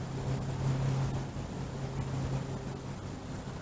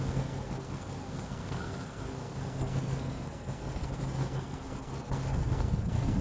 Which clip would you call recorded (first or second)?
first